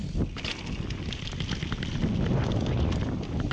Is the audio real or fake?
real